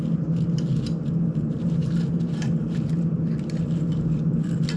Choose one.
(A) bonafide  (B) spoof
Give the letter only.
A